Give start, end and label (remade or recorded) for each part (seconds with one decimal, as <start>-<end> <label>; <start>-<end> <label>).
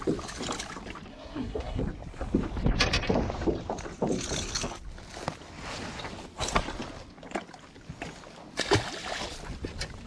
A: 0.0-1.1 recorded; 1.1-1.8 remade; 1.8-10.1 recorded